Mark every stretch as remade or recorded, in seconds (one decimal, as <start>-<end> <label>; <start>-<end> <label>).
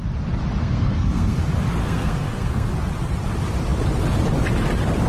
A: 0.0-0.6 recorded; 0.6-1.4 remade; 1.4-1.8 recorded; 1.8-2.7 remade; 2.7-5.1 recorded